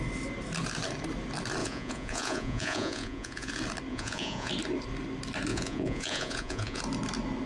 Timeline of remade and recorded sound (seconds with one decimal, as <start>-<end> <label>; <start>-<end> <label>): 0.0-1.6 recorded; 1.6-3.5 remade; 3.5-3.9 recorded; 3.9-4.5 remade; 4.5-5.5 recorded; 5.5-6.8 remade; 6.8-7.5 recorded